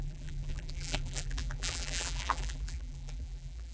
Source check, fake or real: fake